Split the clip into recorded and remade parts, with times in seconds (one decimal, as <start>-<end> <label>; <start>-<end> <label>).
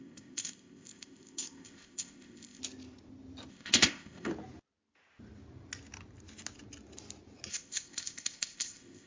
0.0-2.6 remade; 2.6-3.5 recorded; 3.5-4.3 remade; 4.3-7.5 recorded; 7.5-9.1 remade